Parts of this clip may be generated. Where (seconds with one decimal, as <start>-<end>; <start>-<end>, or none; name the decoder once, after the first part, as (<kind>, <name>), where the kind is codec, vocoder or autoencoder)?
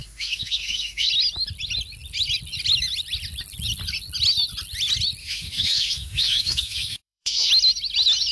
0.0-1.1 (autoencoder, DAC-VAE); 5.2-7.5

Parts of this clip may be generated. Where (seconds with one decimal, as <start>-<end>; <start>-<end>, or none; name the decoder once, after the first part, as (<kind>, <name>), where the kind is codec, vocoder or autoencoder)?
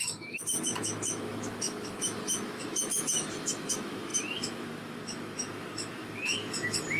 0.0-7.0 (autoencoder, DAC-VAE)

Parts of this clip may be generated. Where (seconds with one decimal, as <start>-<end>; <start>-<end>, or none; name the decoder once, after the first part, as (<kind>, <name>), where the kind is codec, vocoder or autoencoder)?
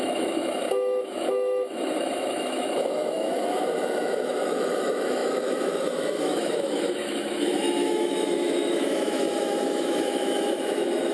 0.0-11.1 (autoencoder, DAC-VAE)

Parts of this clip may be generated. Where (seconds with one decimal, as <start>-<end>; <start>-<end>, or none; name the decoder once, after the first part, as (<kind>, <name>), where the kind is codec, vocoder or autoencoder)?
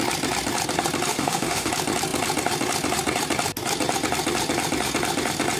1.1-1.7 (autoencoder, DAC-VAE)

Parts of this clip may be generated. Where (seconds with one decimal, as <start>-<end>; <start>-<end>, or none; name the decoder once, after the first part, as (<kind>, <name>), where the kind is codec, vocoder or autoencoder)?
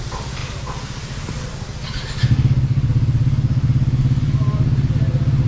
none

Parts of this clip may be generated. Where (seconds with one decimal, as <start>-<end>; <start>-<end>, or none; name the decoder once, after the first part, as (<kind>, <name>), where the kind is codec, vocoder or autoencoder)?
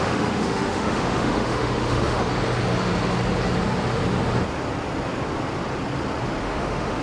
0.0-2.2 (autoencoder, DAC-VAE); 6.4-7.0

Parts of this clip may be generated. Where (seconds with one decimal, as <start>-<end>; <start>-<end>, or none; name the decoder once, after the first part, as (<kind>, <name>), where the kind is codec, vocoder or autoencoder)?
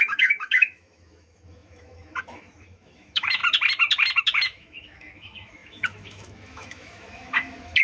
0.0-3.4 (autoencoder, DAC-VAE); 4.2-7.8